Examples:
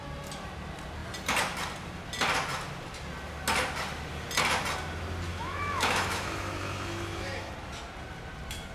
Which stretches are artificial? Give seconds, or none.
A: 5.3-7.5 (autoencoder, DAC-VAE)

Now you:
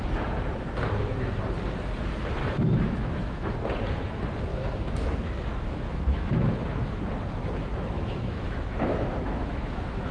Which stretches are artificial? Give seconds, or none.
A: 2.4-3.5 (autoencoder, DAC-VAE); 4.5-6.5; 7.6-10.1

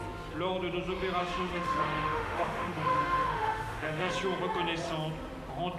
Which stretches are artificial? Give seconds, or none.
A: 1.2-4.1 (autoencoder, DAC-VAE)

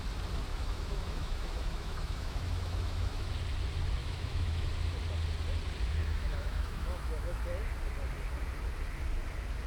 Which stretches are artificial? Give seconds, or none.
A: 0.5-3.3 (autoencoder, DAC-VAE); 4.0-4.7; 6.0-7.4

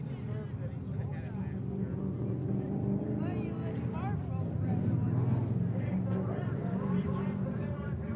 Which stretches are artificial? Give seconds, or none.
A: none

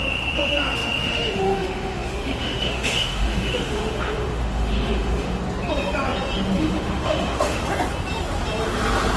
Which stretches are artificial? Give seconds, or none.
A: 0.0-5.4 (autoencoder, DAC-VAE); 6.6-7.6